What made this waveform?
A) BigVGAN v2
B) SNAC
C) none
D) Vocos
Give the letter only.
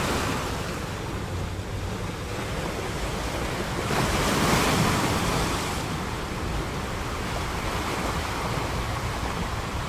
C